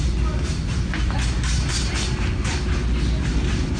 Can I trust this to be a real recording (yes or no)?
yes